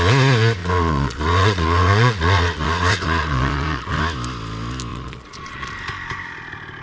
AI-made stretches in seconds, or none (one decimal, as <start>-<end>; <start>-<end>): 0.6-4.0; 4.9-5.7